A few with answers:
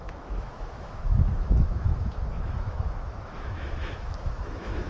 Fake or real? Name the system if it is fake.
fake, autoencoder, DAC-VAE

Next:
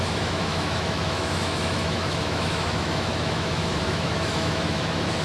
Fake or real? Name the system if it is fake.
fake, autoencoder, DAC-VAE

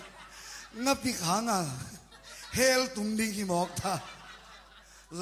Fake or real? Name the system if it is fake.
real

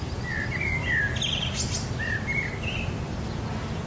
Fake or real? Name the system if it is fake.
real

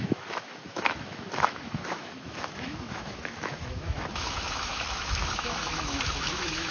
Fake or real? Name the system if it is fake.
fake, autoencoder, DAC-VAE